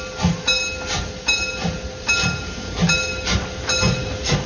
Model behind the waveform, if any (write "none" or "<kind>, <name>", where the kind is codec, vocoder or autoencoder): none